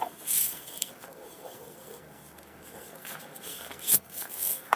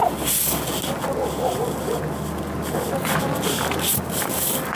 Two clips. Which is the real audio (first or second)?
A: second